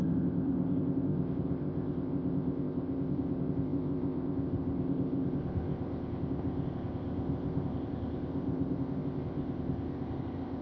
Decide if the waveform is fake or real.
fake